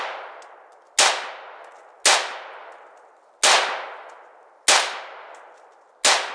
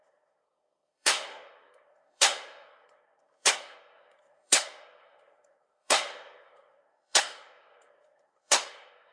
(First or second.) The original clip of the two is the first